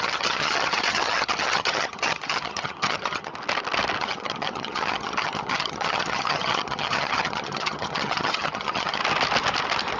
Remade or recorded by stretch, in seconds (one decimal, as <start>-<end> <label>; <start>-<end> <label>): 0.0-3.3 remade; 3.3-4.0 recorded; 4.0-9.0 remade; 9.0-10.0 recorded